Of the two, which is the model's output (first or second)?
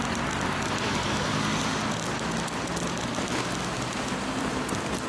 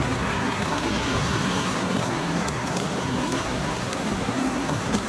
second